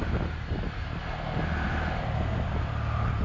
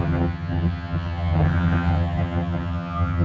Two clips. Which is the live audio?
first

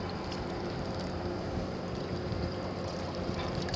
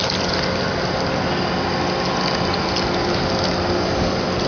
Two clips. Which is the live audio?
second